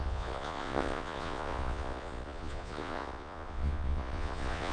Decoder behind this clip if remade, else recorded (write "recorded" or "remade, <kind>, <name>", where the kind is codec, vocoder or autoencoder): remade, vocoder, Vocos